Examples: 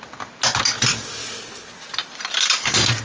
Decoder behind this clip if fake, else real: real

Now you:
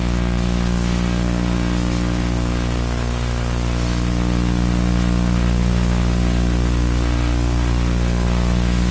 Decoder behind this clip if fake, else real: real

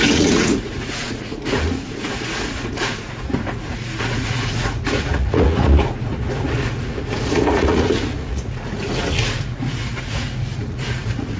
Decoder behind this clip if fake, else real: fake, vocoder, Vocos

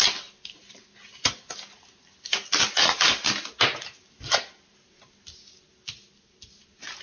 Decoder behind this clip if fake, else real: real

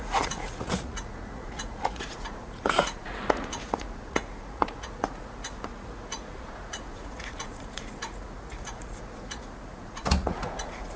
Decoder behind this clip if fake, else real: fake, vocoder, Vocos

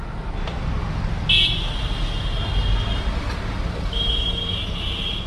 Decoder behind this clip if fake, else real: real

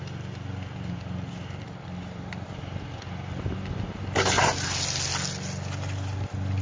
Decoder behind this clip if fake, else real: real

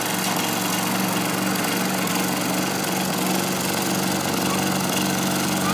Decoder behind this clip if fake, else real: real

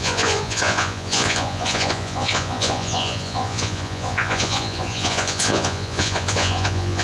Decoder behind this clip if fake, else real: fake, vocoder, Vocos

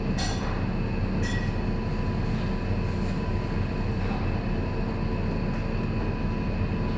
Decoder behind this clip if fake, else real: real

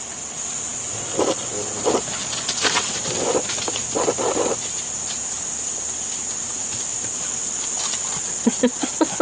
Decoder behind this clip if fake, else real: real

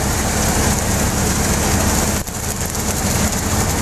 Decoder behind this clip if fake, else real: real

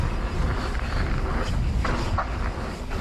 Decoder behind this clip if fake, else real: fake, vocoder, BigVGAN v2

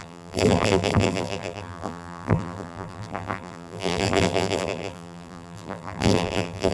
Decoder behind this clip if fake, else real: fake, vocoder, BigVGAN v2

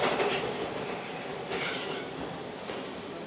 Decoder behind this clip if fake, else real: real